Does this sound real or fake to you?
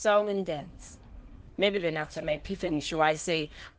fake